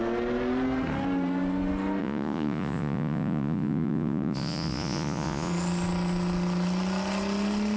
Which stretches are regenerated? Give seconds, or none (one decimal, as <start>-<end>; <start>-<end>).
2.0-5.5